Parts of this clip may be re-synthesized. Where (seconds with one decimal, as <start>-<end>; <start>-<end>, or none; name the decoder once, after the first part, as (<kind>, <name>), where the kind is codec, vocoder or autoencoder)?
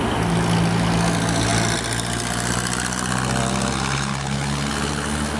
none